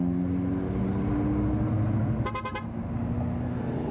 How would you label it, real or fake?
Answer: real